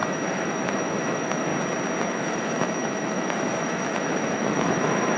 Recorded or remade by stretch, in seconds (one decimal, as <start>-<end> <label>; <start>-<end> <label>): 0.0-1.5 remade; 1.5-2.1 recorded; 2.1-5.2 remade